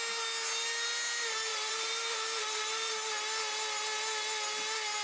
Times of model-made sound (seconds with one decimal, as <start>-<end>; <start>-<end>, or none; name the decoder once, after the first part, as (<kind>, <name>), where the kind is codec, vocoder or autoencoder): 1.5-2.9 (vocoder, BigVGAN v2)